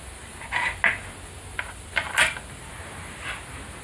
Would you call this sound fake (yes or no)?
no